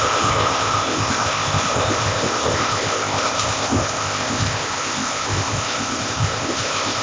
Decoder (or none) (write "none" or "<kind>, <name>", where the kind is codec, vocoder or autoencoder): codec, ZipCodec